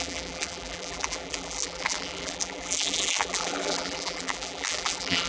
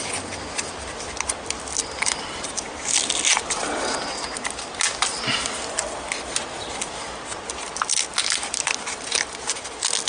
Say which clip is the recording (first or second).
second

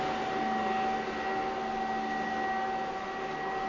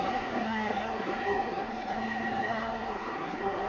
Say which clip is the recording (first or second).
first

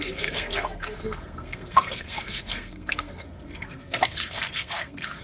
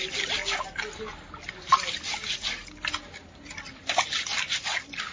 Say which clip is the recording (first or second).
second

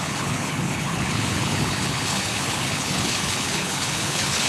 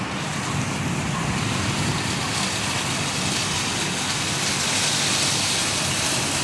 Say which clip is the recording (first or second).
second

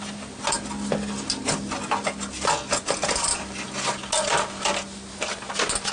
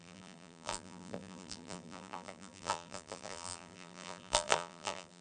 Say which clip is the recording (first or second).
first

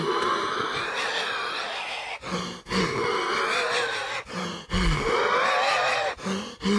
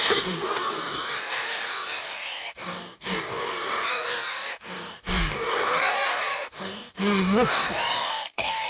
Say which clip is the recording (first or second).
first